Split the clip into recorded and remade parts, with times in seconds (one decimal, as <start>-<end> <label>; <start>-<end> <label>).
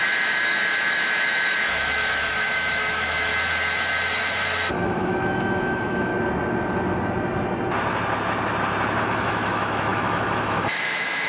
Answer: 0.0-3.3 remade; 3.3-4.7 recorded; 4.7-6.1 remade; 6.1-9.0 recorded; 9.0-11.3 remade